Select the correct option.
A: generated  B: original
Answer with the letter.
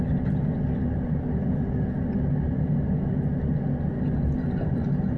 B